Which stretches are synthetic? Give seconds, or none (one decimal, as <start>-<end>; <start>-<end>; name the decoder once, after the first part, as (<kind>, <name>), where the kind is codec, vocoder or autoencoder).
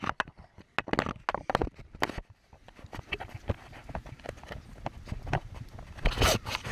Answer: none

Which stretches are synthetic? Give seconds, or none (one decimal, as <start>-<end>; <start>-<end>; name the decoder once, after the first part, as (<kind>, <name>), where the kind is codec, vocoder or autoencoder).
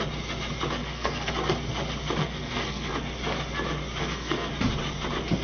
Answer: 0.8-1.3 (codec, SNAC); 2.2-2.9; 4.0-4.5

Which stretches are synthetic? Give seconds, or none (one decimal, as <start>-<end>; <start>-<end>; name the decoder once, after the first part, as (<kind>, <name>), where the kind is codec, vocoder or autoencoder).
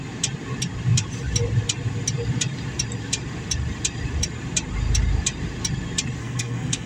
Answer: 6.2-6.9 (codec, SNAC)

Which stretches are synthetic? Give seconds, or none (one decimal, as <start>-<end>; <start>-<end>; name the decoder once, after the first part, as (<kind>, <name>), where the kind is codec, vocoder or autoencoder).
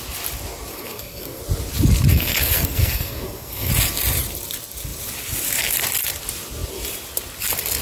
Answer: 0.7-1.4 (codec, SNAC); 2.1-3.7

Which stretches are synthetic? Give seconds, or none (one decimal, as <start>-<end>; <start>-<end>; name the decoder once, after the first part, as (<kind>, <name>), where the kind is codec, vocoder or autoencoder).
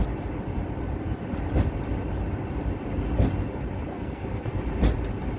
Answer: 3.9-4.6 (codec, SNAC)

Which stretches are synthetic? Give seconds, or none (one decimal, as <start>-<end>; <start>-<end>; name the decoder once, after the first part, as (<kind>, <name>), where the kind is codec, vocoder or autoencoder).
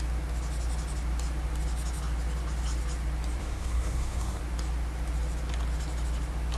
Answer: 3.4-4.4 (codec, SNAC)